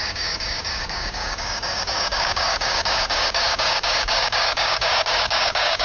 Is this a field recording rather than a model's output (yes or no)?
no